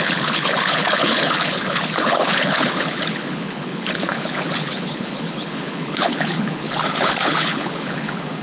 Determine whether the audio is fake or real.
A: fake